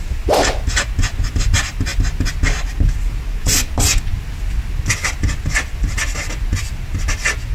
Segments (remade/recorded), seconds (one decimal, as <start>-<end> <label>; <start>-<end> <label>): 0.0-7.5 recorded